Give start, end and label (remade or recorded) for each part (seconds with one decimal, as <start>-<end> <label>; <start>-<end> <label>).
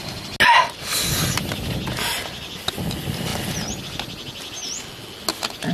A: 0.0-5.7 recorded